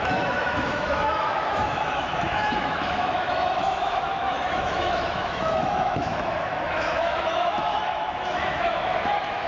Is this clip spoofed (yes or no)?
yes